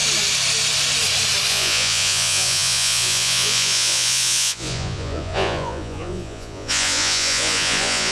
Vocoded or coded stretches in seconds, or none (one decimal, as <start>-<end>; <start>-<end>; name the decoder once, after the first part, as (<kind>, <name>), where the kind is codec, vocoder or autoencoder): 1.5-8.1 (vocoder, Vocos)